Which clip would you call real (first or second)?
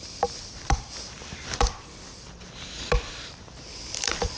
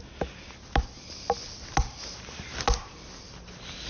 second